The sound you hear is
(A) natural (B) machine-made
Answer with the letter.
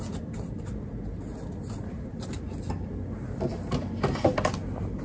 A